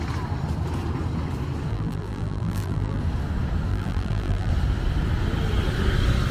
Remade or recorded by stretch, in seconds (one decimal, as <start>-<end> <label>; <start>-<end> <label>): 0.0-1.7 recorded; 1.7-3.0 remade; 3.0-3.7 recorded; 3.7-4.5 remade; 4.5-6.3 recorded